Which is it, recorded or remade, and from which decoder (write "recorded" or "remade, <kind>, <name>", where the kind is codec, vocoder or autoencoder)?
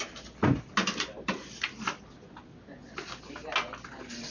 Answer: recorded